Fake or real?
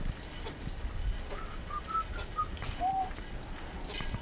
real